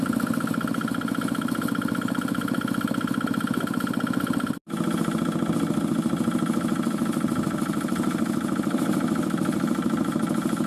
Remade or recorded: recorded